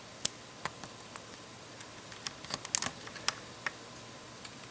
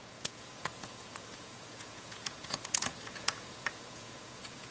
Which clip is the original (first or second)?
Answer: first